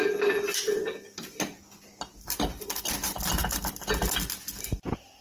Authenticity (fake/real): real